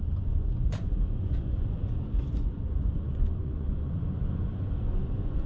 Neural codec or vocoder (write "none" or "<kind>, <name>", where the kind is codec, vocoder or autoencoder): vocoder, Vocos